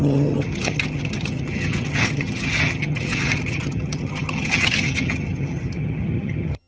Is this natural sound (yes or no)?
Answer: no